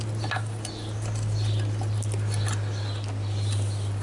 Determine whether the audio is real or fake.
real